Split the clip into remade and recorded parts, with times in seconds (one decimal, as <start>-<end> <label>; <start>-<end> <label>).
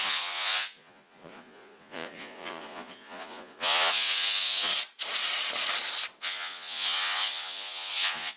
0.0-4.7 remade; 4.7-6.2 recorded; 6.2-8.4 remade